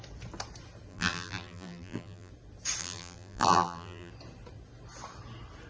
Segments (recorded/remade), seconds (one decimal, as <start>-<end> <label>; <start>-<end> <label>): 0.0-0.9 recorded; 0.9-2.3 remade; 2.3-2.8 recorded; 2.8-4.1 remade; 4.1-5.7 recorded